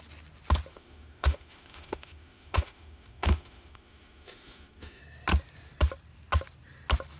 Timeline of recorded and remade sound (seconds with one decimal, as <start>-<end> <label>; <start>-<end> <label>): 0.0-0.7 recorded; 0.7-5.0 remade; 5.0-7.2 recorded